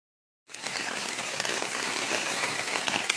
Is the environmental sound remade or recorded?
remade